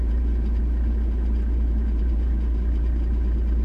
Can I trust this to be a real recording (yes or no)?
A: no